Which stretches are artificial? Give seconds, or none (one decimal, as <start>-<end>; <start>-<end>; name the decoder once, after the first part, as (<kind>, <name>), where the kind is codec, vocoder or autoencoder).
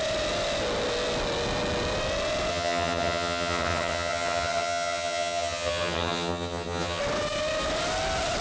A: 2.5-7.0 (vocoder, HiFi-GAN)